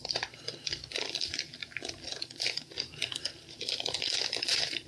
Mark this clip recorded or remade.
remade